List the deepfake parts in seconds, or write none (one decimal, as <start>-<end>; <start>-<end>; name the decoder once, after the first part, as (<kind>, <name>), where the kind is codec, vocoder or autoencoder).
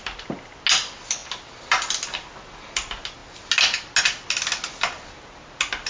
none